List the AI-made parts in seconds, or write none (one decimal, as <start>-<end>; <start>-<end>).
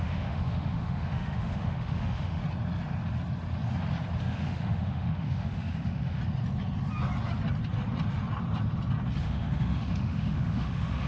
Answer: 0.0-2.4; 4.2-6.2; 9.2-11.1